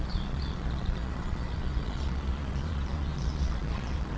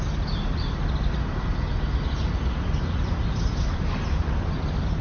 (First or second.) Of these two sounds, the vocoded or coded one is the first